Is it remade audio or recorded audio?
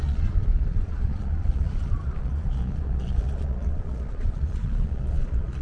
remade